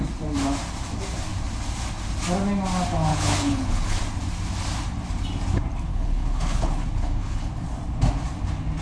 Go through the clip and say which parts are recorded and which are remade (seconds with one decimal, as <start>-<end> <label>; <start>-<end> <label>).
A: 0.0-3.1 recorded; 3.1-4.0 remade; 4.0-5.9 recorded; 5.9-7.5 remade; 7.5-8.8 recorded